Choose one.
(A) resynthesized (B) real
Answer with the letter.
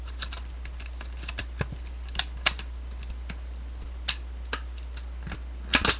B